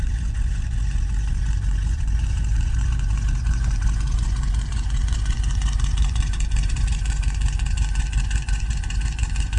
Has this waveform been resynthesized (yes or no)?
yes